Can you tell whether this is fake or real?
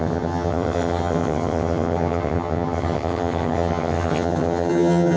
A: fake